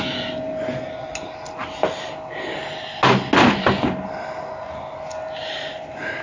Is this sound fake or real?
real